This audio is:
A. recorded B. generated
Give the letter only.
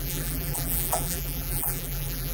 B